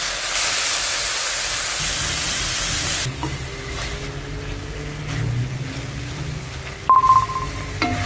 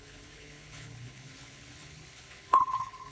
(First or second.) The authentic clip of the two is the first